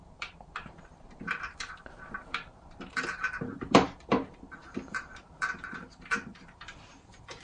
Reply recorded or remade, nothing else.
remade